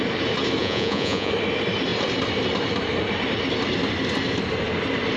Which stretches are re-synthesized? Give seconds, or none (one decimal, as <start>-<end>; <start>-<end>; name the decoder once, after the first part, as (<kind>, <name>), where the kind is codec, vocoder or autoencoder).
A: 0.6-1.3 (vocoder, Vocos)